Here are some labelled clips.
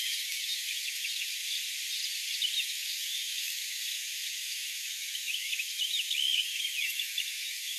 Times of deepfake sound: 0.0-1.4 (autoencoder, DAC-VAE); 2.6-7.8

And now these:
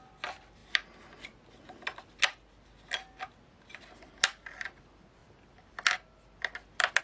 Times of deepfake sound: none

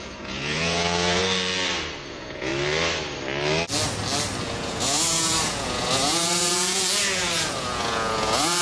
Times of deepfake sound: 0.0-1.2 (vocoder, Vocos); 2.1-2.5; 4.4-8.6

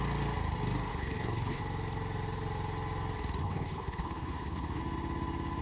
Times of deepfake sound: 0.9-1.6 (codec, HILCodec); 3.4-4.8

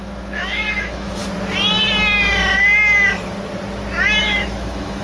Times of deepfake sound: 0.0-1.2 (autoencoder, DAC-VAE); 4.2-5.0